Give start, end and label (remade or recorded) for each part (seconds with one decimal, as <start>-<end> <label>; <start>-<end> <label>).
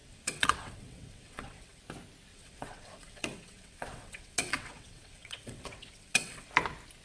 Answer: 0.0-1.8 remade; 1.8-2.3 recorded; 2.3-6.5 remade; 6.5-7.0 recorded